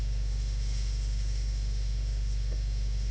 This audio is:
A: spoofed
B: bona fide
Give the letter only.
A